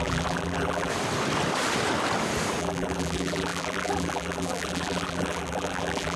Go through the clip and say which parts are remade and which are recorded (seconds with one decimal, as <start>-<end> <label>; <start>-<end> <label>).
0.0-0.9 remade; 0.9-2.6 recorded; 2.6-6.2 remade